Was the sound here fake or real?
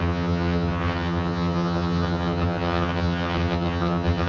fake